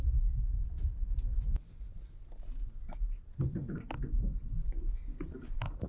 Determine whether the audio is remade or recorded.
recorded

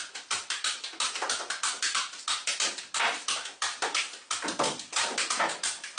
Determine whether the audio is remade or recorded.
recorded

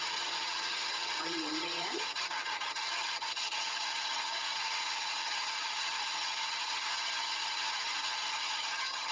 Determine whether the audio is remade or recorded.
remade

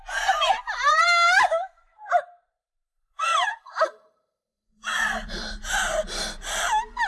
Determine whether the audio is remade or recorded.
remade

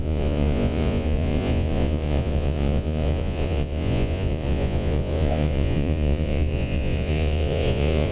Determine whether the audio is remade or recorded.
remade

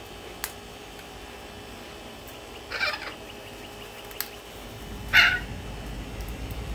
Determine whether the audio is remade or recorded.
recorded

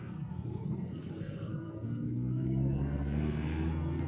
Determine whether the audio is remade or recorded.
remade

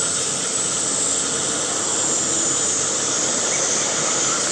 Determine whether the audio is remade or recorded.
recorded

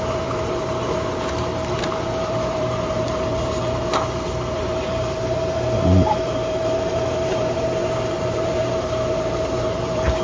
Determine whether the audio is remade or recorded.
remade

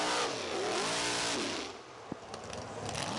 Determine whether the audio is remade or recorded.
recorded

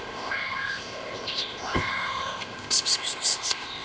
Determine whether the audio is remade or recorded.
remade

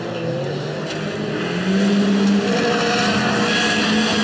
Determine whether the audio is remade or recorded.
recorded